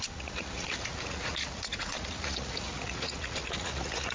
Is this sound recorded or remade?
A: remade